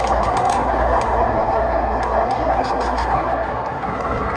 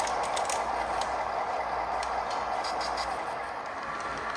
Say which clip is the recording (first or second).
second